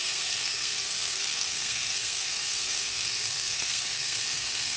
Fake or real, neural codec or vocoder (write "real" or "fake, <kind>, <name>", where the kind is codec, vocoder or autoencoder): fake, codec, SNAC